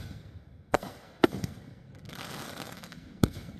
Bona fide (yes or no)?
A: no